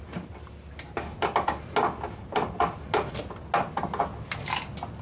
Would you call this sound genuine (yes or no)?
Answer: yes